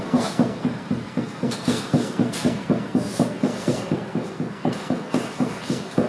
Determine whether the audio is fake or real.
fake